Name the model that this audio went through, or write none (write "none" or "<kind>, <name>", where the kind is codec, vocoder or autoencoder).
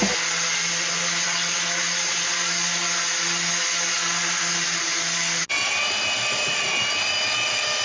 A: none